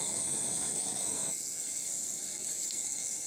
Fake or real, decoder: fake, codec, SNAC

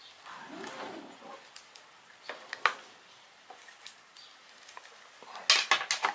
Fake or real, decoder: real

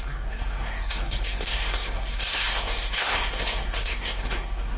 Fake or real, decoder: fake, codec, SNAC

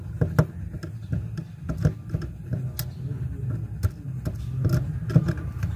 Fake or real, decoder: real